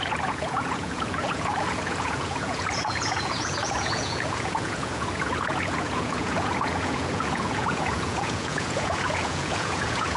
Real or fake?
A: fake